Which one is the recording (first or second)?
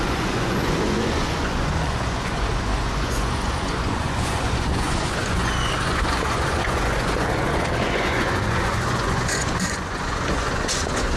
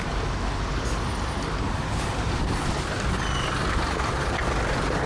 second